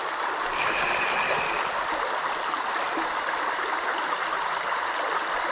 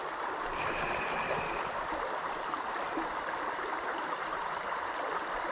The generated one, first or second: second